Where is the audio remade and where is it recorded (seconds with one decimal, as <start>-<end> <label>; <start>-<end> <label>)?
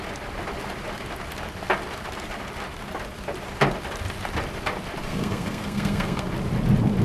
0.0-5.0 recorded; 5.0-6.3 remade; 6.3-7.0 recorded